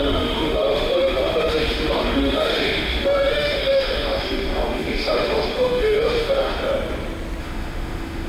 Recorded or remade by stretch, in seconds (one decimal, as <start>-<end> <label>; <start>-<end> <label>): 0.0-6.6 remade; 6.6-7.4 recorded; 7.4-8.3 remade